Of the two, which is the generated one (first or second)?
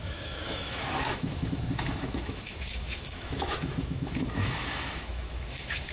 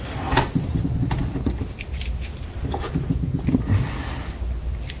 first